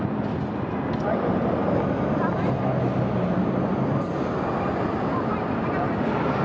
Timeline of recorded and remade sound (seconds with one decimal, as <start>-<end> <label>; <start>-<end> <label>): 0.0-6.4 recorded